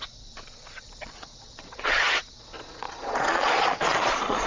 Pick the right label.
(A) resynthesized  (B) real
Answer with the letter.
A